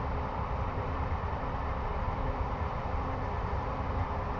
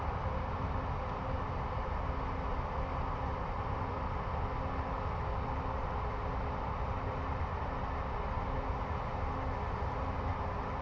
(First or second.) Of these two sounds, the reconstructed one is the first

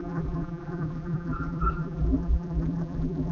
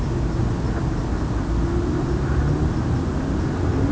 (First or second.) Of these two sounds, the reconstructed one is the first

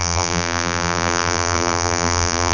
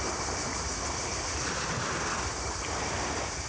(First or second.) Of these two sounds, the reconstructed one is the first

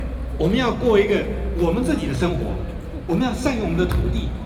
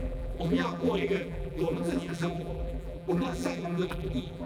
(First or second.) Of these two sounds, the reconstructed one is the second